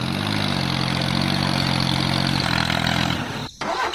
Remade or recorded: recorded